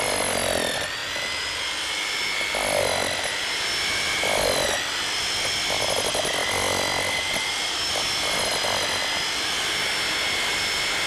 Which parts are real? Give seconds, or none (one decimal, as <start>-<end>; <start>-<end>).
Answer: 0.0-11.1